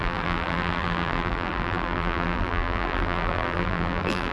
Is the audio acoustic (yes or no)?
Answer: no